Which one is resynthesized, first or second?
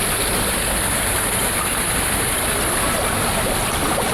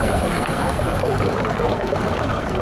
second